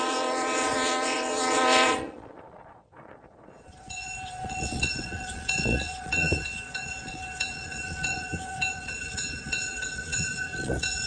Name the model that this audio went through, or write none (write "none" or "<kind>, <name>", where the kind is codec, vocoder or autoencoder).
vocoder, Vocos